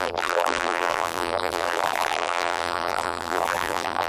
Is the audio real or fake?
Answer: fake